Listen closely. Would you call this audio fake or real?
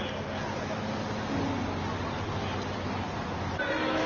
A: real